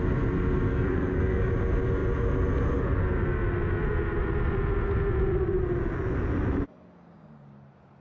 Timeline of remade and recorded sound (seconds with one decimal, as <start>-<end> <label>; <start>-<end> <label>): 0.0-0.7 recorded; 0.7-1.5 remade; 1.5-8.0 recorded